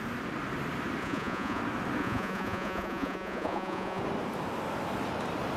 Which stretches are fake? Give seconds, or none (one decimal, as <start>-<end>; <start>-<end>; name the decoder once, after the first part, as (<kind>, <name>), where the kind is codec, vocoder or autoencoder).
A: 1.0-1.6 (vocoder, Vocos); 2.0-4.0

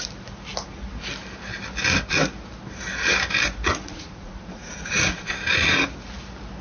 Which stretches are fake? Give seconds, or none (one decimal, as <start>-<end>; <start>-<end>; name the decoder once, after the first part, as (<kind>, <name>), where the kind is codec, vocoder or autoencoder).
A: 3.7-5.3 (vocoder, Vocos)

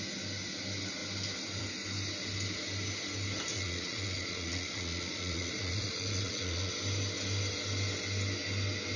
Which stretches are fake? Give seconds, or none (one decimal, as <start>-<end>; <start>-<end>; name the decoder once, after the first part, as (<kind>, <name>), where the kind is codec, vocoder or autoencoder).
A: 3.5-6.7 (vocoder, Vocos)

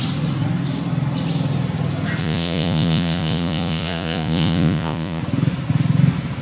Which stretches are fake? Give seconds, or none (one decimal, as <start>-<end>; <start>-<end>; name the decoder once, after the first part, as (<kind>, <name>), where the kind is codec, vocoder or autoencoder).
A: 2.2-5.2 (vocoder, Vocos)

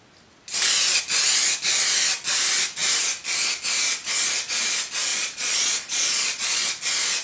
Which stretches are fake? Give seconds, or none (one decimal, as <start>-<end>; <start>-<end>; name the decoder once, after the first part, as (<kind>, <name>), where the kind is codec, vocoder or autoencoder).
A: 5.1-6.7 (vocoder, Vocos)